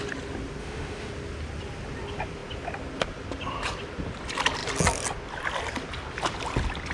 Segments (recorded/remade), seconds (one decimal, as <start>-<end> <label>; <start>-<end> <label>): 0.0-0.6 recorded; 0.6-1.1 remade; 1.1-6.9 recorded

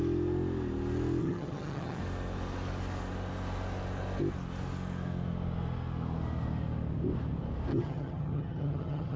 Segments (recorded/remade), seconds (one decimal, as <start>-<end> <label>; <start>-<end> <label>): 0.0-1.2 recorded; 1.2-2.0 remade; 2.0-7.7 recorded; 7.7-9.2 remade

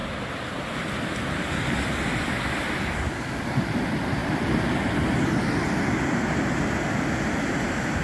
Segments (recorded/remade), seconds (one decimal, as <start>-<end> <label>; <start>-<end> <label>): 0.0-8.0 recorded

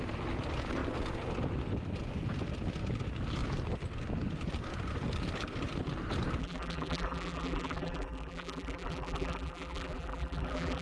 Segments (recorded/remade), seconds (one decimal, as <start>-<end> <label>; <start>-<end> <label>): 0.0-6.4 recorded; 6.4-10.8 remade

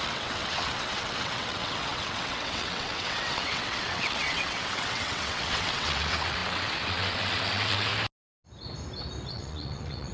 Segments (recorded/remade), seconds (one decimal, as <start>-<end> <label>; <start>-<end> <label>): 0.0-7.9 remade; 7.9-9.3 recorded; 9.3-10.1 remade

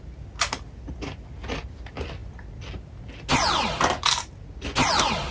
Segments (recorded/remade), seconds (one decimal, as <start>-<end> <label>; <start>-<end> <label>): 0.0-5.3 recorded